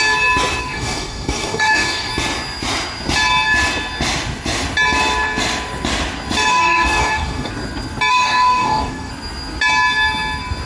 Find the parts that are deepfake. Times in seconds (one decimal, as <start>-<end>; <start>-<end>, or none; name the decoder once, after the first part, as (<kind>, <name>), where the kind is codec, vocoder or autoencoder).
0.6-2.1 (codec, DAC); 6.5-7.5; 8.1-9.1